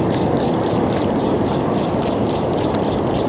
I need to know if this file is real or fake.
real